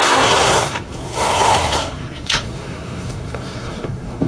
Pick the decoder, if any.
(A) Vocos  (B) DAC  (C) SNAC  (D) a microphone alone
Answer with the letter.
C